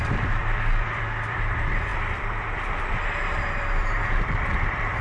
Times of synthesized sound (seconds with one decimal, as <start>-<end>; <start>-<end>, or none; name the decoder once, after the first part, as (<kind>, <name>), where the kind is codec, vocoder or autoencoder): 0.0-5.0 (vocoder, BigVGAN v2)